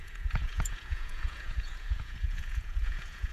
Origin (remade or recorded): remade